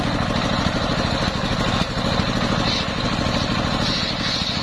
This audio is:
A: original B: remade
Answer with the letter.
A